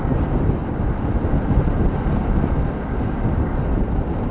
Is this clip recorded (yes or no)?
yes